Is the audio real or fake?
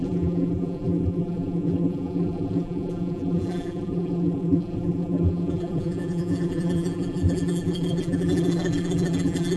fake